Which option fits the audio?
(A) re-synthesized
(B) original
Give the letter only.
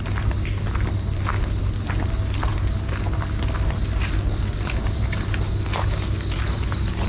B